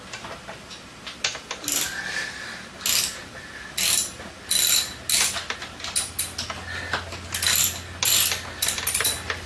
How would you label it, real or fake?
real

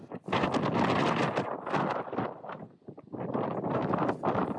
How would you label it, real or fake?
real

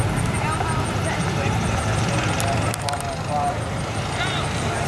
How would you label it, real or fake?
real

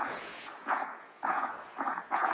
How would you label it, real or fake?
fake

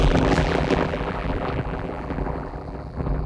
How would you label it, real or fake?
fake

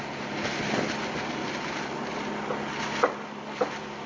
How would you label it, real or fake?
real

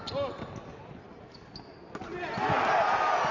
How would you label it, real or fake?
real